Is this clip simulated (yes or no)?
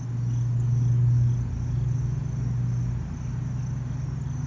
no